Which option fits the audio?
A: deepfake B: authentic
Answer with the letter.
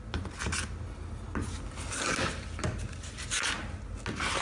B